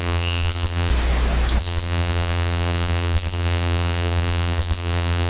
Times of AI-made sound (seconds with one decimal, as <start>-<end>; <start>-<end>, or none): 0.0-0.9; 1.6-5.3